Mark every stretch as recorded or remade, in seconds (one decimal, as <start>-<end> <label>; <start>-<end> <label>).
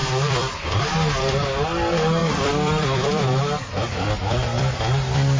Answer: 0.0-0.8 remade; 0.8-2.2 recorded; 2.2-5.4 remade